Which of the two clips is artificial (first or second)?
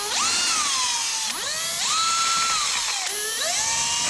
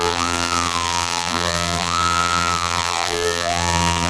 second